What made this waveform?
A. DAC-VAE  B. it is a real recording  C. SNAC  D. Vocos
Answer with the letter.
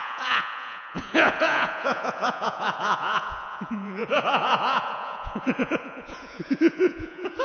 D